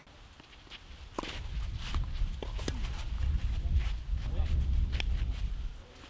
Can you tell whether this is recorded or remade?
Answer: recorded